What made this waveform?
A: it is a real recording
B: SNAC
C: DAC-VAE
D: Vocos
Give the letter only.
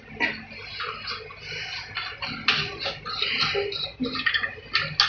A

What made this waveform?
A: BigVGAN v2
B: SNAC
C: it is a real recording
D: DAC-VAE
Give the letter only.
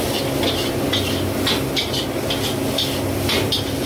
C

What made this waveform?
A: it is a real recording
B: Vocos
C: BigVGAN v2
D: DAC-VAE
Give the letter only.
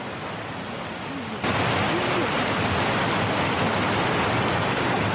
A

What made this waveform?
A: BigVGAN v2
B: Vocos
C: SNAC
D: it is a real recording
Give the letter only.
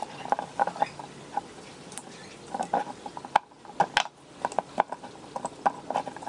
D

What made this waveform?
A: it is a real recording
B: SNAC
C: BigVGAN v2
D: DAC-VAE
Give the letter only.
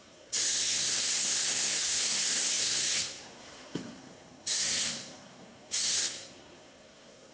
B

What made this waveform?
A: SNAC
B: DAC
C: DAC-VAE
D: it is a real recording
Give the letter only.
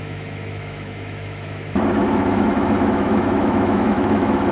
C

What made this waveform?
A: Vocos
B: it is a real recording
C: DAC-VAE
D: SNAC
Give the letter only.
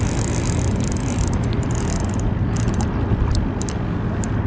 B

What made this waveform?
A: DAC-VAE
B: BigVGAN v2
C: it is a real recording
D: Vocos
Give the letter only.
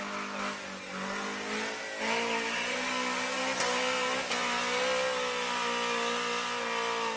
C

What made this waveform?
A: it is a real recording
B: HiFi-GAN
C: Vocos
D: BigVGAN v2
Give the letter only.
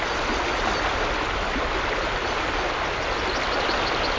A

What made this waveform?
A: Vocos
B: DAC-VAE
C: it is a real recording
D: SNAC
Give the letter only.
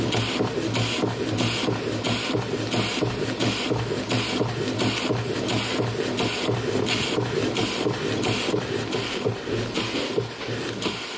C